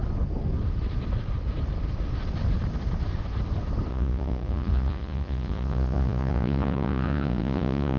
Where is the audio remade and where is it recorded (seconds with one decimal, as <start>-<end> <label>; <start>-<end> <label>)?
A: 0.0-3.9 recorded; 3.9-8.0 remade

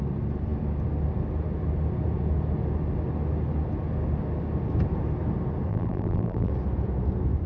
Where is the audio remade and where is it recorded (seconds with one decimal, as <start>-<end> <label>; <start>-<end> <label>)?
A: 0.0-5.7 recorded; 5.7-6.5 remade; 6.5-7.5 recorded

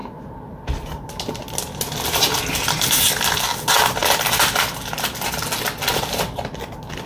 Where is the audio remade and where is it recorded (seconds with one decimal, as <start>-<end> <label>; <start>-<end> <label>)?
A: 0.0-7.1 recorded